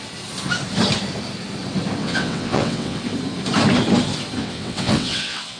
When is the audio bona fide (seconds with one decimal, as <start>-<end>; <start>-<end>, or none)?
0.0-2.0; 3.0-4.4